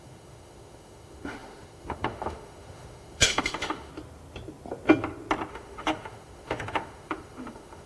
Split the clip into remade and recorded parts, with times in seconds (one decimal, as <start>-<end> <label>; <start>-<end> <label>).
0.0-3.9 remade; 3.9-5.5 recorded; 5.5-7.9 remade